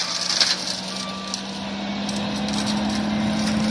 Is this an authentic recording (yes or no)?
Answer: yes